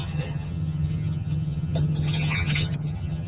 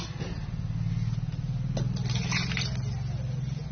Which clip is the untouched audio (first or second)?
second